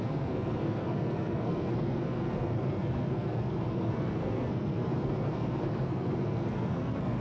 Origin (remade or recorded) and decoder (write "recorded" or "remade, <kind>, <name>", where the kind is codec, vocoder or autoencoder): remade, codec, SNAC